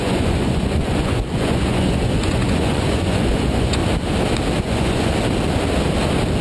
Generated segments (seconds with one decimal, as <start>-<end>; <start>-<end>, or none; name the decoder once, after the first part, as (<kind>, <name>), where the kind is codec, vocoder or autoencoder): 0.0-3.8 (vocoder, Vocos); 4.6-5.1